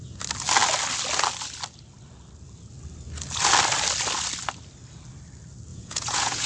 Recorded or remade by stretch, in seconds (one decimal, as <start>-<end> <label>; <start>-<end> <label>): 0.0-5.7 recorded; 5.7-6.5 remade